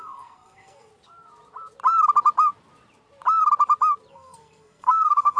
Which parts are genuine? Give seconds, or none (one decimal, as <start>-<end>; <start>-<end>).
0.9-4.1